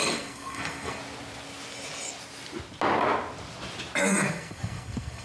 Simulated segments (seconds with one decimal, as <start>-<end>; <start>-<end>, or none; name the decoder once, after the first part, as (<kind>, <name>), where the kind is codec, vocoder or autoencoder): 0.0-1.0 (codec, SNAC); 4.1-5.2